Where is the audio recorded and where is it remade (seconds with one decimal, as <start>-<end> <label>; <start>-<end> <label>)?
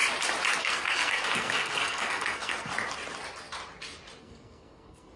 0.0-0.6 recorded; 0.6-2.7 remade; 2.7-4.2 recorded; 4.2-5.2 remade